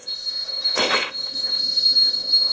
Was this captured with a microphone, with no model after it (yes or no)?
no